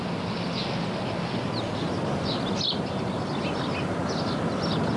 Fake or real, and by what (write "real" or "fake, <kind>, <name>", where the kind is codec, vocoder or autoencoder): real